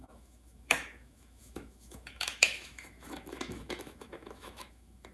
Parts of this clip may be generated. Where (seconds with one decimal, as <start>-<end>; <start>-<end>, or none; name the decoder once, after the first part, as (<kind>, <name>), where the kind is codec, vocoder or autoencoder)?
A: 0.0-5.1 (autoencoder, DAC-VAE)